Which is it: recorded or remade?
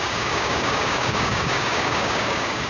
remade